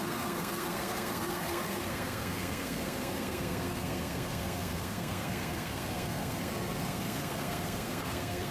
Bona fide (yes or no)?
no